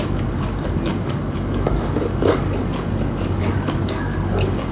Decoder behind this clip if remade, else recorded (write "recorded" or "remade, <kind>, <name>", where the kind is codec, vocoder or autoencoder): remade, codec, DAC